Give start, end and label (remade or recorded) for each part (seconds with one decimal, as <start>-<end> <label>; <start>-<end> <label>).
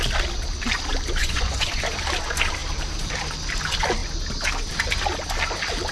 0.0-1.2 recorded; 1.2-1.8 remade; 1.8-5.9 recorded